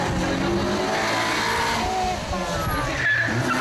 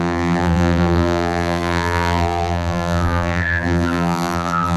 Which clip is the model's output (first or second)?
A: second